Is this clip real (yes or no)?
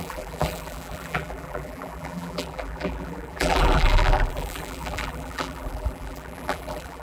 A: no